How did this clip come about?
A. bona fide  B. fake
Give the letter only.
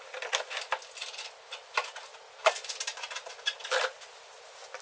A